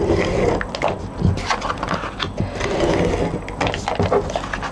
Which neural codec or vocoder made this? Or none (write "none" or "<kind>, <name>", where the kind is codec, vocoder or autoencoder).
none